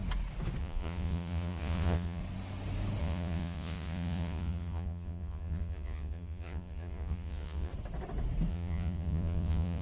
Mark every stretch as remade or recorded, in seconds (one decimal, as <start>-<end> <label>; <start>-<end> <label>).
0.0-0.6 recorded; 0.6-2.2 remade; 2.2-3.0 recorded; 3.0-7.7 remade; 7.7-8.5 recorded; 8.5-9.8 remade